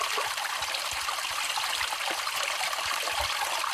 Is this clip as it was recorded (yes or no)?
no